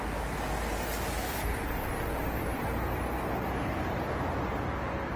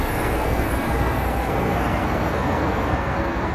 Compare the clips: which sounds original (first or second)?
first